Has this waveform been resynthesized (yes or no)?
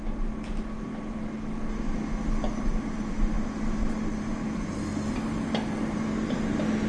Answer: no